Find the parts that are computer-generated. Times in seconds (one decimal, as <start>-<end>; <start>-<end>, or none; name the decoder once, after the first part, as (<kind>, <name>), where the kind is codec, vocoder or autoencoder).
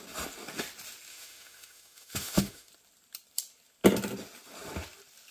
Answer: 1.1-2.7 (autoencoder, DAC-VAE)